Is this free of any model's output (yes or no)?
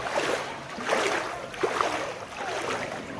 yes